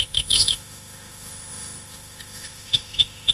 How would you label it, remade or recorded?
remade